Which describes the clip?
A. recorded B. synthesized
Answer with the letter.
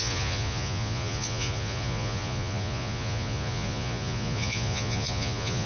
B